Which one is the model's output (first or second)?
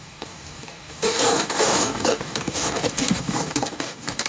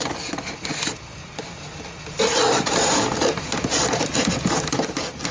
first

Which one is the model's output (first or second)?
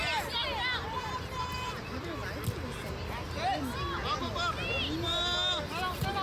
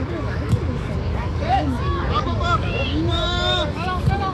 second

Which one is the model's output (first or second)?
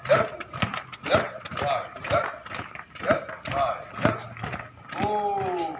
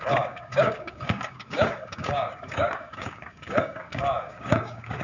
second